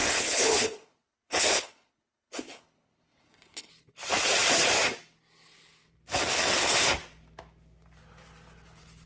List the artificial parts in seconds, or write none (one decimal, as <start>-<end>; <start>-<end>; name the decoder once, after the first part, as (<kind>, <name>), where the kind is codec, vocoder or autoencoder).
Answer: 0.0-3.7 (codec, HILCodec)